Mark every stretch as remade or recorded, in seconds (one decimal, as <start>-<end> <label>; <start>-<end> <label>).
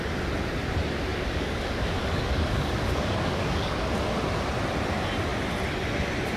0.0-1.1 recorded; 1.1-3.9 remade; 3.9-6.4 recorded